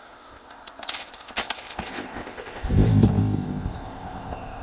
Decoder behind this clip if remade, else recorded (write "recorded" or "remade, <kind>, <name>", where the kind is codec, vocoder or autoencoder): remade, codec, ZipCodec